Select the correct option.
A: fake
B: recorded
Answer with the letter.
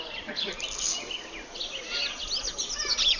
B